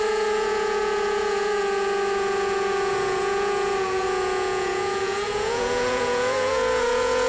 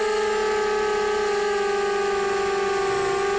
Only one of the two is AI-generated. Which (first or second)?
first